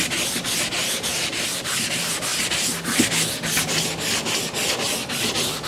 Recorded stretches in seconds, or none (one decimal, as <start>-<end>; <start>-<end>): 0.0-1.1; 1.9-5.7